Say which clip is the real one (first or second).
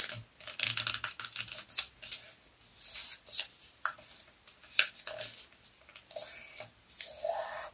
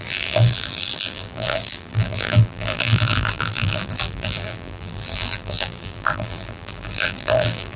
first